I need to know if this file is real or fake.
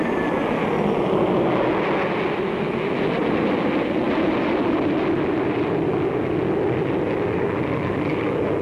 real